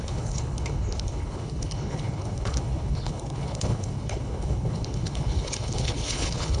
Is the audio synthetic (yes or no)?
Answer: yes